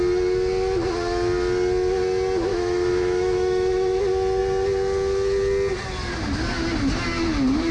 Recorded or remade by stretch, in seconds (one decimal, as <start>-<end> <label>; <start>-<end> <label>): 0.0-2.5 recorded; 2.5-4.0 remade; 4.0-7.7 recorded